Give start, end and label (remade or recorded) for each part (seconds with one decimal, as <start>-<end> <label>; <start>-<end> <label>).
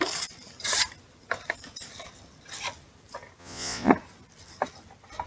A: 0.0-3.4 recorded; 3.4-3.9 remade; 3.9-5.3 recorded